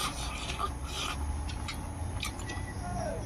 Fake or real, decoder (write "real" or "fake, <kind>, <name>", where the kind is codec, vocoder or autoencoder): real